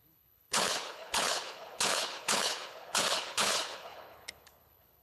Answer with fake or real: fake